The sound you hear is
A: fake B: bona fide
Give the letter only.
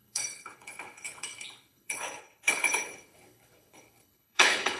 A